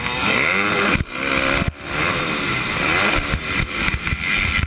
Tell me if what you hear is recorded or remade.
recorded